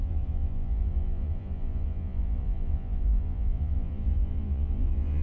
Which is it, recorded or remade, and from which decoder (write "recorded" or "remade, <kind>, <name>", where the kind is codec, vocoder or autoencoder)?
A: remade, vocoder, Vocos